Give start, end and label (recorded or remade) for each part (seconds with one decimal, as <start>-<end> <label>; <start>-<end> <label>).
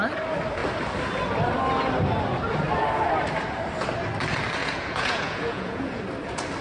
0.0-4.6 recorded; 4.6-6.0 remade; 6.0-6.6 recorded